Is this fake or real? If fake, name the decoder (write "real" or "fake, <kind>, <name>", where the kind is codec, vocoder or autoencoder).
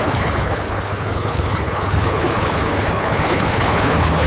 fake, codec, HILCodec